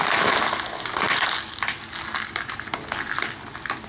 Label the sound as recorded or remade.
recorded